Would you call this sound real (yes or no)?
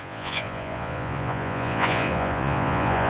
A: no